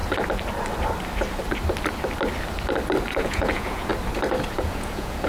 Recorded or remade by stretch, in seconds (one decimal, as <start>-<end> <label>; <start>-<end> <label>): 0.0-3.2 recorded; 3.2-3.9 remade; 3.9-4.5 recorded; 4.5-5.3 remade